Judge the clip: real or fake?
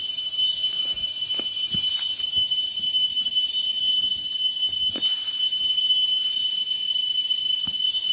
real